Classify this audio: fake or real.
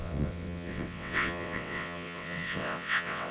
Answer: fake